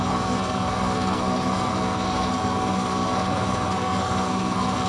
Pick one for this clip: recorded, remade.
remade